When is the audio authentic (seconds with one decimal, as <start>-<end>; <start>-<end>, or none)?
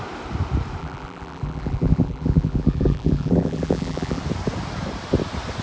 0.0-0.8; 4.2-5.6